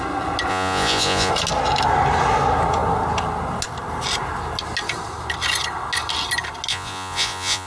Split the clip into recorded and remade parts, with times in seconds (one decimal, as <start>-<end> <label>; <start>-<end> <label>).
0.0-0.5 recorded; 0.5-1.3 remade; 1.3-6.7 recorded; 6.7-7.7 remade